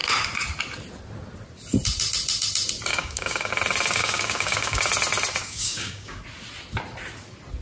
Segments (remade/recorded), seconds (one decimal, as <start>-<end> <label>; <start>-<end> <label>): 0.0-2.9 recorded; 2.9-3.5 remade; 3.5-4.0 recorded; 4.0-4.8 remade; 4.8-5.4 recorded; 5.4-6.2 remade; 6.2-7.6 recorded